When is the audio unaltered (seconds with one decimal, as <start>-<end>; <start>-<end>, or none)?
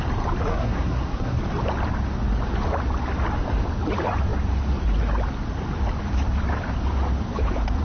0.0-0.5; 1.4-7.8